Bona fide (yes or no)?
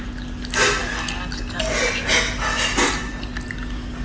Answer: yes